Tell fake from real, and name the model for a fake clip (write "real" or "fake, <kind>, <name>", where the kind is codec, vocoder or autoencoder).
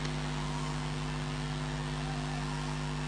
real